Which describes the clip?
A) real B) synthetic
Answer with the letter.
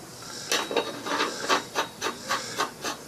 A